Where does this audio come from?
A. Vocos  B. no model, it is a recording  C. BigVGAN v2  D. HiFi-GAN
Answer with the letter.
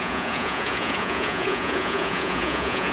A